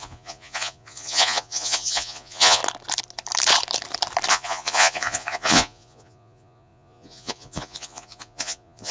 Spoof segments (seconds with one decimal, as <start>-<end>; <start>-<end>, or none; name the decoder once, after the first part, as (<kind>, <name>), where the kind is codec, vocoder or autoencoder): 0.0-2.6 (vocoder, Vocos); 4.3-8.9